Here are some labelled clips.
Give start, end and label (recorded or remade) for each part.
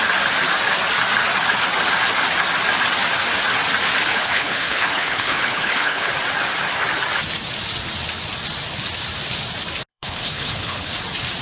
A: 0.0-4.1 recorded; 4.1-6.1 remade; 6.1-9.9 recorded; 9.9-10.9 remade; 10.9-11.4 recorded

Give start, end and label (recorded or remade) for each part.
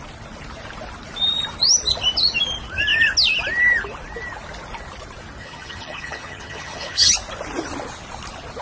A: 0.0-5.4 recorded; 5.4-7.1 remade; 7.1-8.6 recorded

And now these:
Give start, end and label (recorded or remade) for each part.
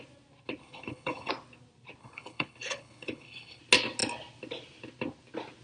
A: 0.0-0.6 recorded; 0.6-1.3 remade; 1.3-2.0 recorded; 2.0-3.6 remade; 3.6-5.6 recorded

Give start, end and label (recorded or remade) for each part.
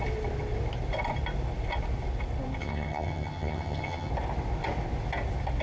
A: 0.0-2.6 recorded; 2.6-4.1 remade; 4.1-5.6 recorded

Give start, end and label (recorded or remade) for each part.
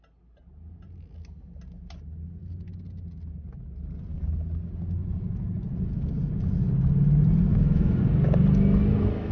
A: 0.0-7.5 recorded; 7.5-8.0 remade; 8.0-9.3 recorded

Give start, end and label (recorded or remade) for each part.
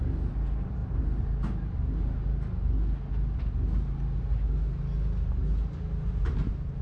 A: 0.0-6.8 recorded